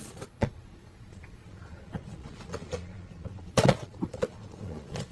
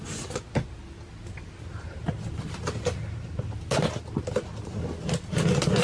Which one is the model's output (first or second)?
first